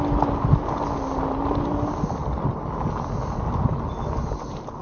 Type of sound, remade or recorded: recorded